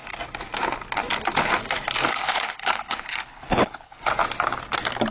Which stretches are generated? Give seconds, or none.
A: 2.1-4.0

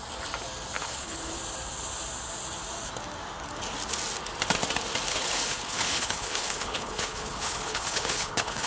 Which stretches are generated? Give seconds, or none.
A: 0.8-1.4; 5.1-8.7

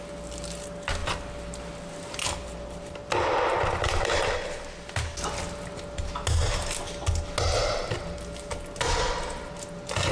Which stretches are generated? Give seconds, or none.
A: none